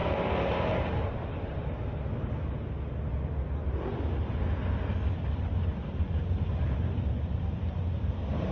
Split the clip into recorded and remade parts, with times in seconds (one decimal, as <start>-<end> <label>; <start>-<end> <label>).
0.0-1.3 remade; 1.3-8.5 recorded